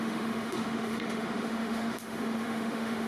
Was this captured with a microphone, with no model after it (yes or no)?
no